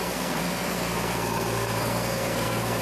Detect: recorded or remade remade